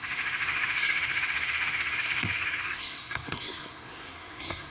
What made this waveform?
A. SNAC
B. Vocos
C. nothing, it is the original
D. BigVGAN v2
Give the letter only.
A